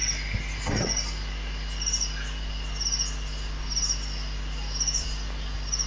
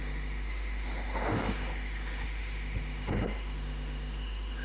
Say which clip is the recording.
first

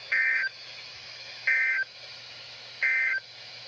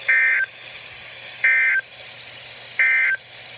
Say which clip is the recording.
second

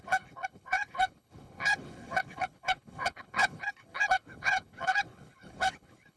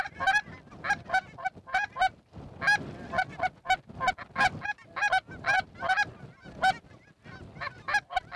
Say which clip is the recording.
second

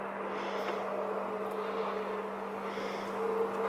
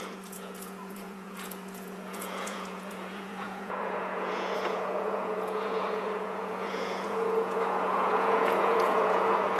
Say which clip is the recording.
first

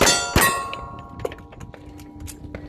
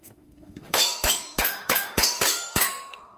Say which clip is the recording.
first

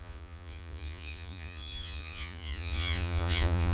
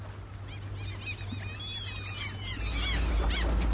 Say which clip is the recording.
second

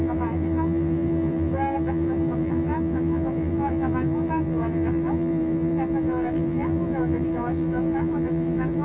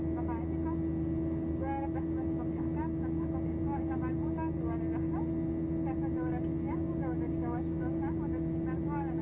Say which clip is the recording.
second